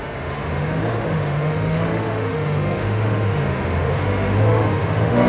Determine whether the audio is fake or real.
fake